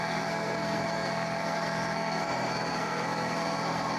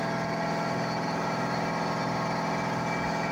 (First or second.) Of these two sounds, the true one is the second